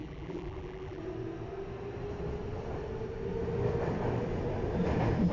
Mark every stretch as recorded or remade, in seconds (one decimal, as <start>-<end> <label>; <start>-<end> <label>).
0.0-1.0 remade; 1.0-5.3 recorded